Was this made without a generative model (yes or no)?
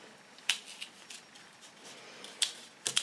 yes